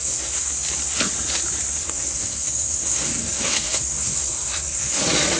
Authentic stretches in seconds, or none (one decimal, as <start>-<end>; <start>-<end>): 0.5-1.8; 5.0-5.4